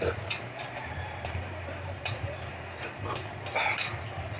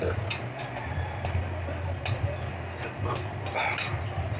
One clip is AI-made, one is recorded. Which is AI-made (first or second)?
first